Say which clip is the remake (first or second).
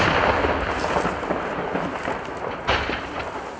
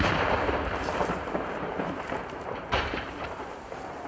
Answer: second